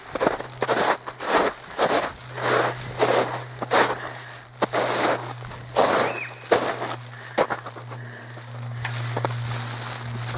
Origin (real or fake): real